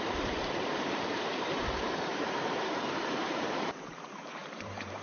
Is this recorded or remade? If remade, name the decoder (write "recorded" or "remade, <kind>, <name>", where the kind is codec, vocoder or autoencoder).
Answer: remade, vocoder, BigVGAN v2